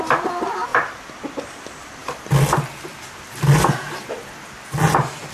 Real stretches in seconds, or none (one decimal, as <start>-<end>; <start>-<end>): 0.0-5.3